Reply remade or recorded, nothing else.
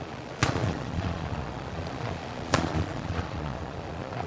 remade